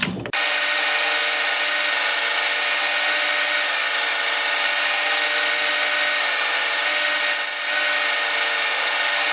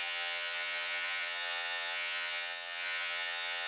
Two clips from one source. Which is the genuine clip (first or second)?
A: first